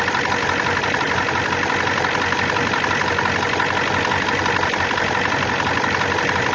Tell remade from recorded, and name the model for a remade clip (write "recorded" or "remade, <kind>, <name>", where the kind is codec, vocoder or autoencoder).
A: recorded